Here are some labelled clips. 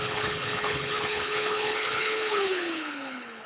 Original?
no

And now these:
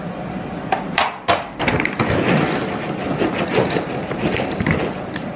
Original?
yes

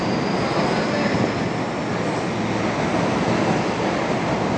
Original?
yes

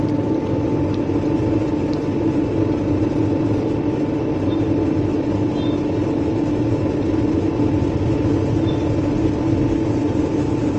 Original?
yes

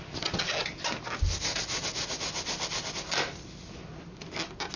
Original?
yes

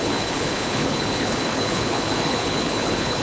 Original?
no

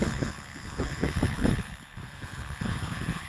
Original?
no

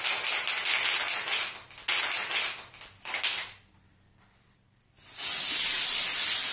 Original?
yes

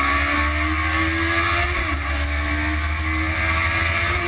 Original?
yes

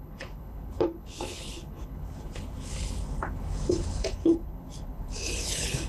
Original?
no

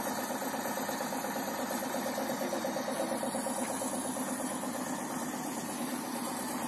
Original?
yes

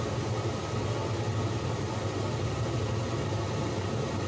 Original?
yes